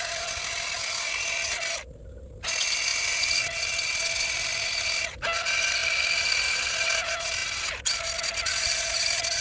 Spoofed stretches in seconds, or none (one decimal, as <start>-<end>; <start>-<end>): 2.9-3.4; 4.5-5.0